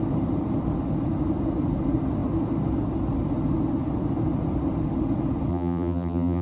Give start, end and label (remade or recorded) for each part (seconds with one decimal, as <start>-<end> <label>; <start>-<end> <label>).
0.0-5.5 recorded; 5.5-6.4 remade